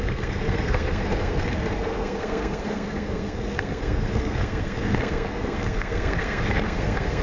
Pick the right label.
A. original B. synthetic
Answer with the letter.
B